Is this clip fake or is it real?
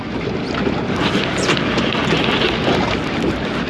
real